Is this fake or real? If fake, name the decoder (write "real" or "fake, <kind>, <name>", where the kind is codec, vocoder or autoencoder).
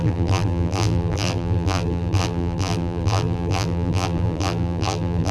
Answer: fake, vocoder, BigVGAN v2